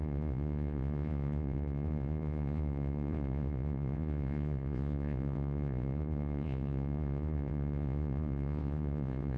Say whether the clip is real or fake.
fake